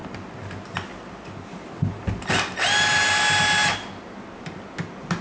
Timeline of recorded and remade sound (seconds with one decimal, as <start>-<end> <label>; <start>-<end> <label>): 0.0-5.2 recorded